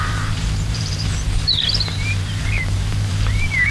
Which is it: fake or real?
fake